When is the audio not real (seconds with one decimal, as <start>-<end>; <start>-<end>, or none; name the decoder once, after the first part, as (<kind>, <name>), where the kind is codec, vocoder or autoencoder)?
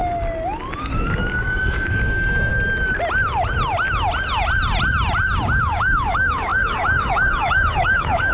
0.8-2.5 (codec, DAC); 5.6-8.3